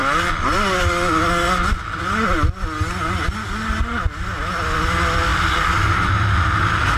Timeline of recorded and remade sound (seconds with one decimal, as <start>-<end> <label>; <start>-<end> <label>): 0.0-7.0 recorded